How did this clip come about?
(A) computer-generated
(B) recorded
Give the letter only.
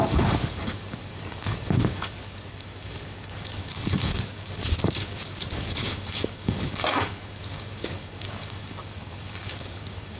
A